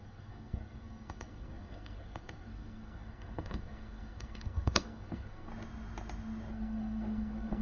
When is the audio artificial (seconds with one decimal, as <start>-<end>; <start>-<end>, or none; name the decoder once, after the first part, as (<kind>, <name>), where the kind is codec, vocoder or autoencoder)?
0.0-5.5 (codec, SNAC); 6.5-7.6